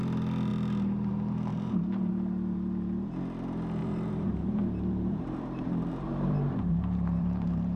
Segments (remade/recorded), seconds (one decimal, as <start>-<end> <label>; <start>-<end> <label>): 0.0-1.5 recorded; 1.5-2.1 remade; 2.1-3.8 recorded; 3.8-7.8 remade